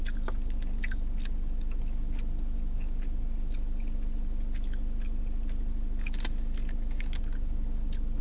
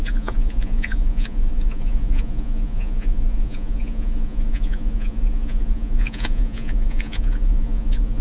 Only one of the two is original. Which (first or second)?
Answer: first